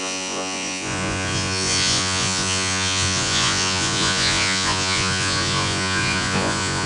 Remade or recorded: remade